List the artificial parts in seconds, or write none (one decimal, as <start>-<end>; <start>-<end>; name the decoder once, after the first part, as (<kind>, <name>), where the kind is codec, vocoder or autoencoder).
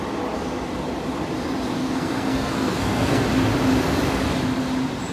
1.8-3.2 (codec, SNAC)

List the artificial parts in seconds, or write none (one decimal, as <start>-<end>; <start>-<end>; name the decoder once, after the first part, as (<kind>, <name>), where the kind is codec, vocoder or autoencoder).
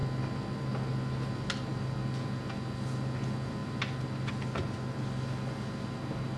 none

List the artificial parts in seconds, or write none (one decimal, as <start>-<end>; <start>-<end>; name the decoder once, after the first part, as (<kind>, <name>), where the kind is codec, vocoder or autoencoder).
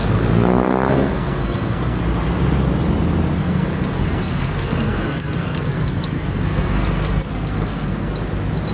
0.0-2.0 (codec, SNAC); 3.4-8.1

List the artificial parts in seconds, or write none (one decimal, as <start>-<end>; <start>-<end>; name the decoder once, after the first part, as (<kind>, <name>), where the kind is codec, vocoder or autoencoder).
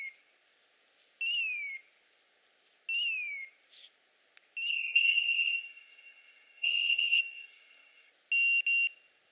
4.7-8.1 (codec, SNAC)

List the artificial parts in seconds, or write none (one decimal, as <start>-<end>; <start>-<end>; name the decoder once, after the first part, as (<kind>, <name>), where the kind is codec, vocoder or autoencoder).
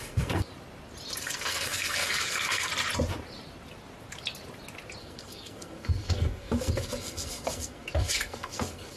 0.0-0.5 (codec, SNAC); 1.2-2.7; 5.0-9.0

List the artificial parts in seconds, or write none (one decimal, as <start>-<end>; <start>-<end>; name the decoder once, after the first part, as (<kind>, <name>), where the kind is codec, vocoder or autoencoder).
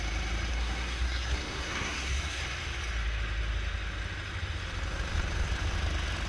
0.5-2.4 (codec, SNAC)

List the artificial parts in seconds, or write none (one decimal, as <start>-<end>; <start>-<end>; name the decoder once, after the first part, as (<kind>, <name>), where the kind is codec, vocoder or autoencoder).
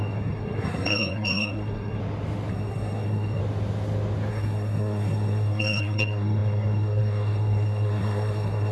0.0-2.0 (codec, SNAC); 2.5-3.4; 4.3-8.7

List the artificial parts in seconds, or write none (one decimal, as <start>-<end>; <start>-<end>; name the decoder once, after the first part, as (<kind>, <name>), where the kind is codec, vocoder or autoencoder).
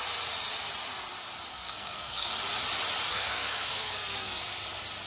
1.5-2.3 (codec, SNAC); 3.1-4.4